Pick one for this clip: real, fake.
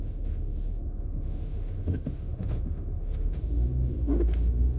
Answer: fake